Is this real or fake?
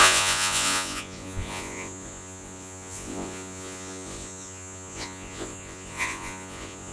fake